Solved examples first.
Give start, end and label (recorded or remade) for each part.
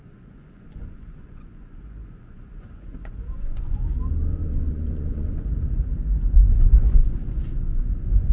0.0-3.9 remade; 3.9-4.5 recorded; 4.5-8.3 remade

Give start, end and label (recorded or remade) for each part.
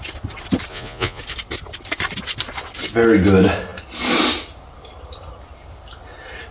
0.0-0.7 recorded; 0.7-1.2 remade; 1.2-6.5 recorded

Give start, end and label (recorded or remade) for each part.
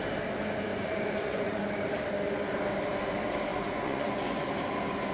0.0-0.7 recorded; 0.7-1.7 remade; 1.7-3.5 recorded; 3.5-4.5 remade; 4.5-5.1 recorded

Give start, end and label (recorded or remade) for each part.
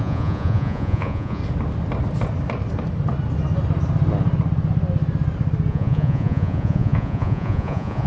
0.0-1.4 remade; 1.4-5.7 recorded; 5.7-8.1 remade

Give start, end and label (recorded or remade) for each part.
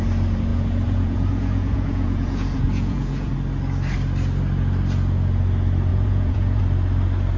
0.0-0.5 recorded; 0.5-3.3 remade; 3.3-5.9 recorded; 5.9-6.6 remade; 6.6-7.4 recorded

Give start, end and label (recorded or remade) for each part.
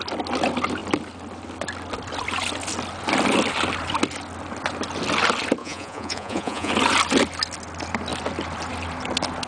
0.0-5.6 recorded; 5.6-6.7 remade; 6.7-9.5 recorded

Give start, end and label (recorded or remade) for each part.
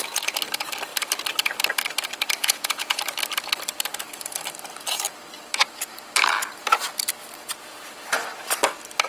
0.0-2.4 recorded; 2.4-3.0 remade; 3.0-9.1 recorded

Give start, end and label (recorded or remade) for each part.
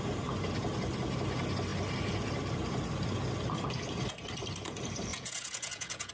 0.0-5.1 recorded; 5.1-6.1 remade